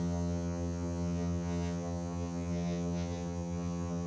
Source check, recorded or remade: remade